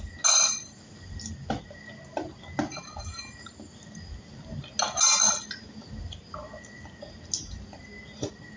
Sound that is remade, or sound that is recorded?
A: recorded